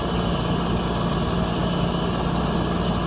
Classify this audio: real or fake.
real